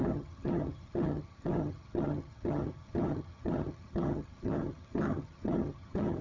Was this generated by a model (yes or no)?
yes